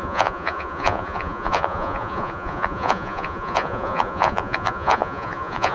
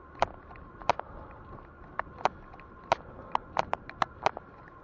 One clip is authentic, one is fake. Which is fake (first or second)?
first